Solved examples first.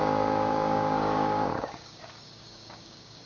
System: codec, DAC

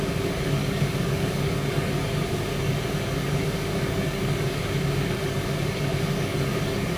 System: codec, DAC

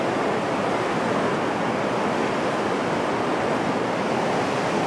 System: none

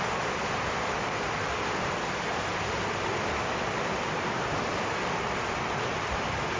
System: none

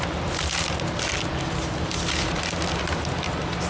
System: none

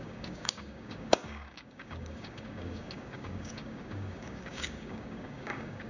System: codec, DAC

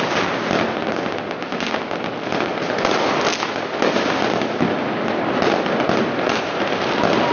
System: none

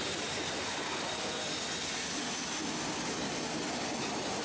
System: none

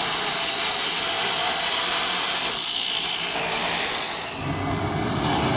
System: none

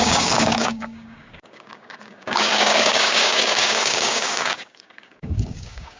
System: codec, DAC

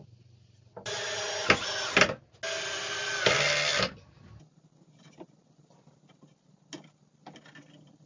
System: none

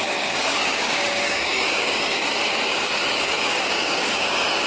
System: codec, DAC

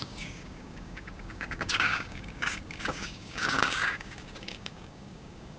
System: codec, DAC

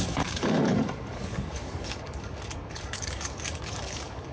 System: codec, DAC